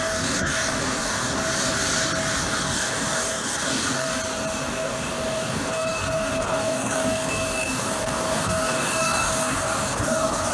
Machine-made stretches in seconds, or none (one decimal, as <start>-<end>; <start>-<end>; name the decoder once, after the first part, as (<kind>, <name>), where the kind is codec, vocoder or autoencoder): 0.0-1.4 (codec, DAC); 2.4-4.2; 4.7-10.5